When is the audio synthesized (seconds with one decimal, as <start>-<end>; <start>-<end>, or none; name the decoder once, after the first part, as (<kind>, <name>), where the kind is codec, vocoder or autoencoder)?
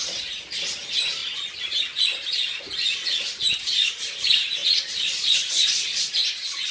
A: 4.6-6.1 (vocoder, Vocos)